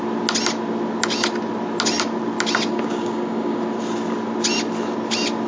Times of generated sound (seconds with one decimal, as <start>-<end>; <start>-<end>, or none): 2.7-3.6